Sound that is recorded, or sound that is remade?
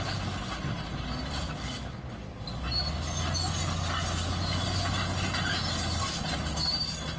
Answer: recorded